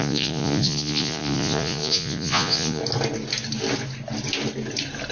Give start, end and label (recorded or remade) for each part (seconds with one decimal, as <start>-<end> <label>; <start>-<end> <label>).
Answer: 0.0-2.8 remade; 2.8-5.1 recorded